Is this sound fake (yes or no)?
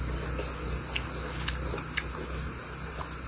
no